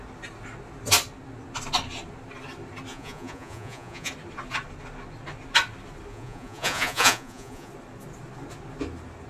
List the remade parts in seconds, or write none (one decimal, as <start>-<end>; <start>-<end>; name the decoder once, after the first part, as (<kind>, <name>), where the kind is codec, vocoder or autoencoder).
2.9-4.1 (vocoder, Vocos); 6.1-7.7

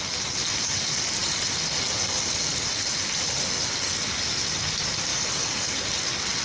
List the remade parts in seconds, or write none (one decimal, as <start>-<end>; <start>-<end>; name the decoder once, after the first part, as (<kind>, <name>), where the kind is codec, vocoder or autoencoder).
5.1-5.9 (codec, DAC)

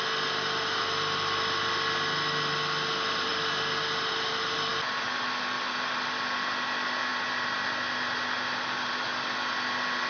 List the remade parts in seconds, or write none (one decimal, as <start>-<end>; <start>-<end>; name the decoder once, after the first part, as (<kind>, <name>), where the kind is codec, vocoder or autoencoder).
none

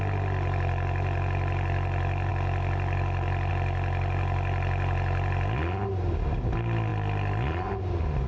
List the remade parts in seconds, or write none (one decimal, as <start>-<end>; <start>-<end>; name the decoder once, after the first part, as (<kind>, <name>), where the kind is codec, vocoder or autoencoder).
none

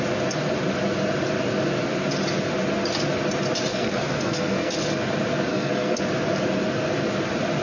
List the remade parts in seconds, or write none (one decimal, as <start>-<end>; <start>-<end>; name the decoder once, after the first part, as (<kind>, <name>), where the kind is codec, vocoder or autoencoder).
3.7-4.7 (codec, SNAC); 5.5-6.0

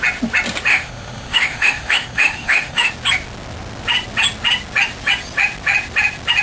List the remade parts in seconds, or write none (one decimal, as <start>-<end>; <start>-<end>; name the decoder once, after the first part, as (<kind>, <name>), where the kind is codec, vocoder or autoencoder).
0.7-2.9 (autoencoder, DAC-VAE)